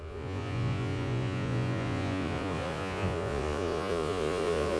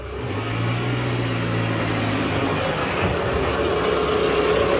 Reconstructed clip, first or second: first